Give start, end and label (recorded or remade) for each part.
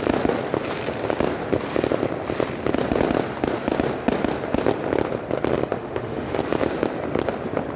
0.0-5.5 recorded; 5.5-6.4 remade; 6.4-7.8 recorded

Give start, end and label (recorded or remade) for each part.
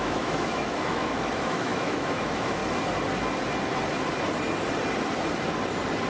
0.0-2.6 remade; 2.6-6.1 recorded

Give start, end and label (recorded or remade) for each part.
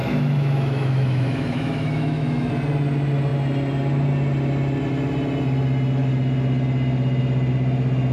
0.0-2.5 remade; 2.5-8.1 recorded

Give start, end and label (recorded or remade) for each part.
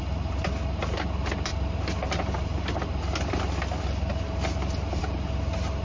0.0-5.8 recorded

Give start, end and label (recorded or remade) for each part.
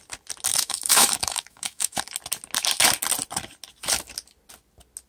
0.0-0.5 recorded; 0.5-2.0 remade; 2.0-5.1 recorded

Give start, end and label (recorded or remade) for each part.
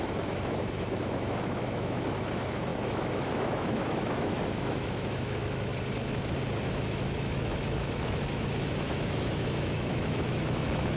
0.0-5.7 remade; 5.7-6.7 recorded; 6.7-11.0 remade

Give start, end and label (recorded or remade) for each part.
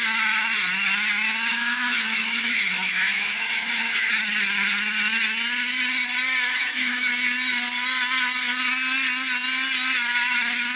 0.0-1.5 recorded; 1.5-4.1 remade; 4.1-6.5 recorded; 6.5-7.1 remade; 7.1-10.8 recorded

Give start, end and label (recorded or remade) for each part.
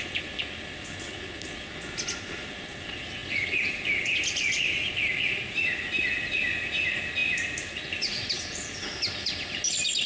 0.0-10.1 recorded